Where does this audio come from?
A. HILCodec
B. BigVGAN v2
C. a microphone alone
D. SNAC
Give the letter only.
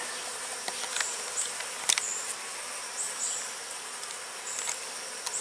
C